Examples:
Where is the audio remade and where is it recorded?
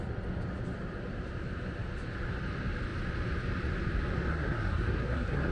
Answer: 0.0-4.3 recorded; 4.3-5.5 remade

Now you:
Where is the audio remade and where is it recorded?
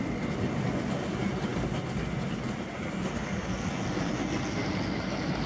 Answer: 0.0-5.5 recorded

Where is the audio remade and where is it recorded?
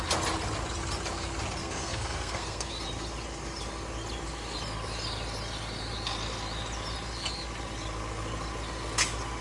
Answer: 0.0-1.6 recorded; 1.6-2.7 remade; 2.7-9.4 recorded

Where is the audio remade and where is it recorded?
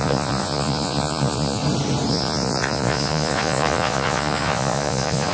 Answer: 0.0-1.6 remade; 1.6-2.1 recorded; 2.1-5.3 remade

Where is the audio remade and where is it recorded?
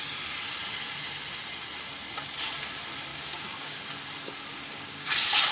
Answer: 0.0-3.1 recorded; 3.1-3.8 remade; 3.8-4.5 recorded; 4.5-5.1 remade; 5.1-5.5 recorded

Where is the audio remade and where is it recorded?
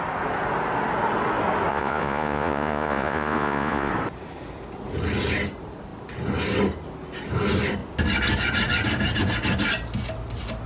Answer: 0.0-1.7 recorded; 1.7-3.9 remade; 3.9-10.7 recorded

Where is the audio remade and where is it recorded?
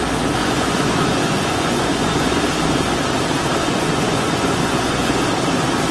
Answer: 0.0-0.4 recorded; 0.4-2.4 remade; 2.4-3.6 recorded; 3.6-5.2 remade; 5.2-5.9 recorded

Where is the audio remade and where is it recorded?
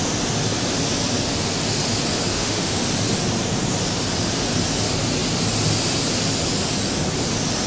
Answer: 0.0-2.3 recorded; 2.3-2.8 remade; 2.8-7.7 recorded